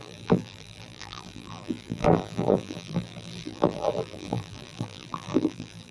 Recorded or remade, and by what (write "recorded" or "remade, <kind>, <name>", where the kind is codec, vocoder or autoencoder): remade, vocoder, BigVGAN v2